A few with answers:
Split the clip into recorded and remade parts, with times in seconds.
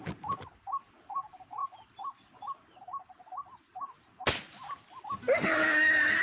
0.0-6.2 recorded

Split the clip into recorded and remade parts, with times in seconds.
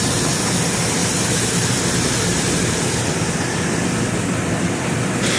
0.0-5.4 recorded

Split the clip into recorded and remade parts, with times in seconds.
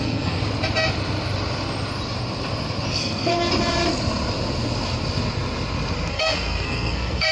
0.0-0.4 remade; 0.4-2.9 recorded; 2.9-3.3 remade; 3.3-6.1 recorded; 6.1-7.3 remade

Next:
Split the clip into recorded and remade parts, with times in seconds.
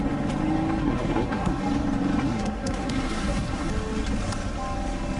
0.0-0.8 recorded; 0.8-1.6 remade; 1.6-2.2 recorded; 2.2-3.7 remade; 3.7-5.2 recorded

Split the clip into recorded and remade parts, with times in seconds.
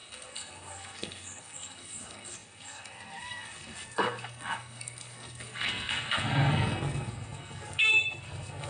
0.0-8.7 remade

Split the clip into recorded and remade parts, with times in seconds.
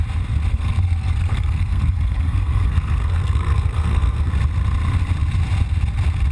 0.0-0.5 recorded; 0.5-4.3 remade; 4.3-6.3 recorded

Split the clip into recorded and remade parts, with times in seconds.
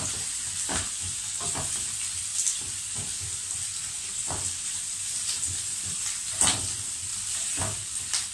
0.0-8.3 recorded